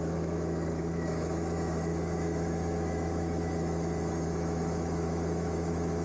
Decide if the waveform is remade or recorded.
remade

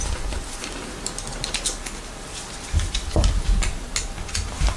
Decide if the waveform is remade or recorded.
recorded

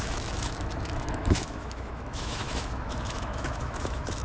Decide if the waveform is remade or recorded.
remade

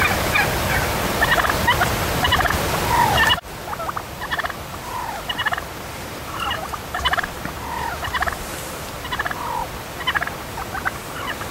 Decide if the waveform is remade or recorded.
recorded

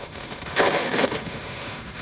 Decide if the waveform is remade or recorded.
remade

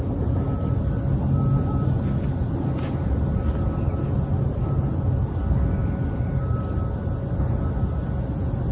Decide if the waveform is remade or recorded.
recorded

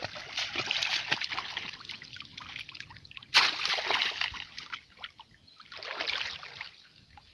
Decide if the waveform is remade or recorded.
recorded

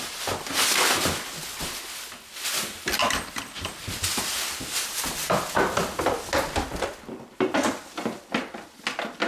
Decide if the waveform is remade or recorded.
recorded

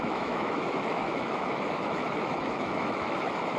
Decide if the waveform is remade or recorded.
remade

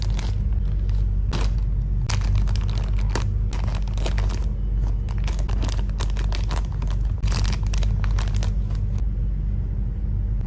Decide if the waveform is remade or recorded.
recorded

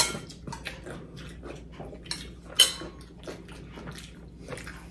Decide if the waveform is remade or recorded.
recorded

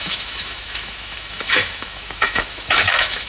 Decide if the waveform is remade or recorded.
remade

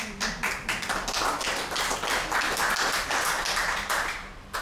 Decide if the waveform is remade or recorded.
recorded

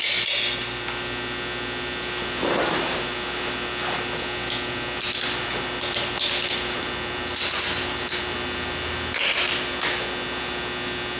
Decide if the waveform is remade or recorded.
recorded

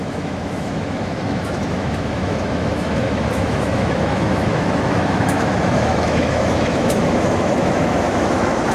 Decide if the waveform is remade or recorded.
remade